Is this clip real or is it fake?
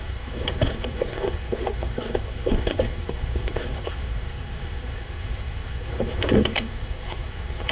fake